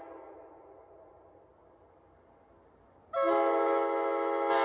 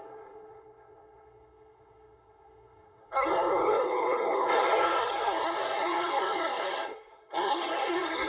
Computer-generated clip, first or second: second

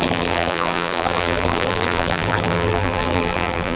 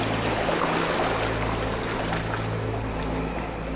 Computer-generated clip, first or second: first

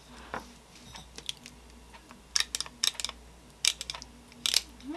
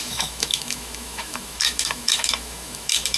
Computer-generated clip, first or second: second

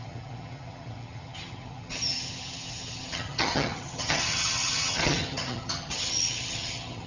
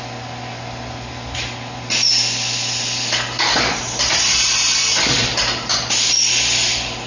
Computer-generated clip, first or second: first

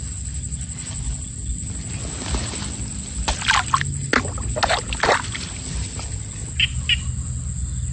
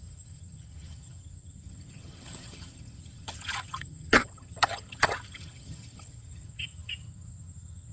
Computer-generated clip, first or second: second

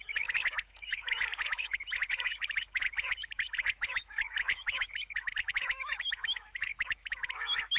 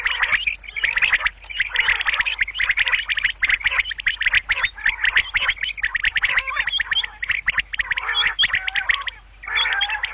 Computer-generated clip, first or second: first